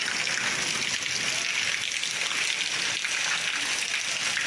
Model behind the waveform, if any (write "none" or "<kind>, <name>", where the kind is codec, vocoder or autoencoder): none